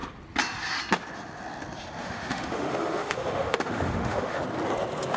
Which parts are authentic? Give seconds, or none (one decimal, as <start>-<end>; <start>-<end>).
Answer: 0.0-2.0; 4.4-5.2